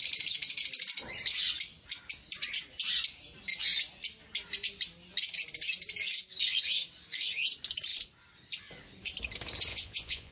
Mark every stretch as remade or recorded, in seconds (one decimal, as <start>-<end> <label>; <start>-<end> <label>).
0.0-9.7 recorded; 9.7-10.3 remade